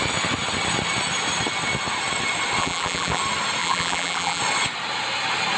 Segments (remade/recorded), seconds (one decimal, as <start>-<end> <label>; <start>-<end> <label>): 0.0-2.6 recorded; 2.6-3.2 remade; 3.2-3.6 recorded; 3.6-4.4 remade; 4.4-5.6 recorded